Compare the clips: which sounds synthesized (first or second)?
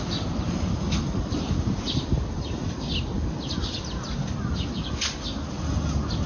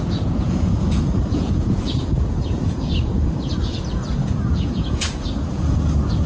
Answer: second